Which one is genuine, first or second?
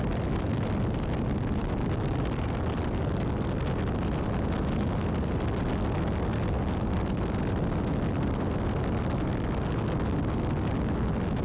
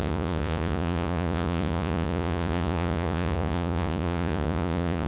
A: first